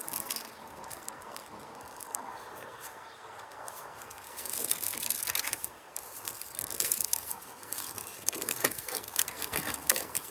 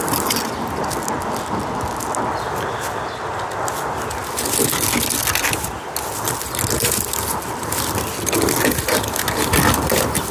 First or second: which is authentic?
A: second